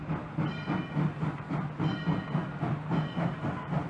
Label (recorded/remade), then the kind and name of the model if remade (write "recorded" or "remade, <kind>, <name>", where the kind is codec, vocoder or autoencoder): recorded